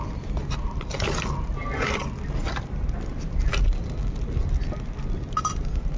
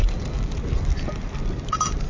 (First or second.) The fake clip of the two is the second